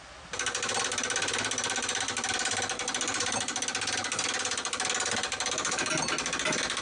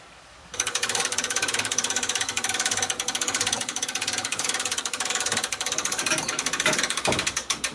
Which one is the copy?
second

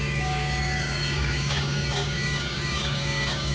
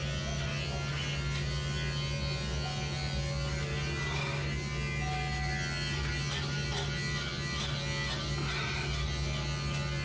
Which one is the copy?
first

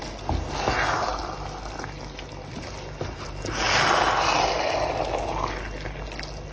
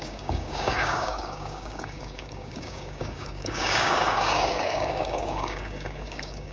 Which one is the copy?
second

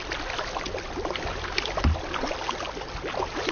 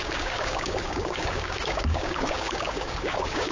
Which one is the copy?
second